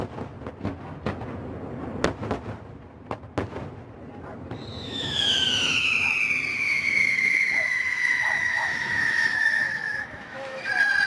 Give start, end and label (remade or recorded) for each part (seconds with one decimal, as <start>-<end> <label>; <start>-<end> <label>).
0.0-4.7 recorded; 4.7-6.1 remade; 6.1-6.5 recorded; 6.5-10.6 remade; 10.6-11.1 recorded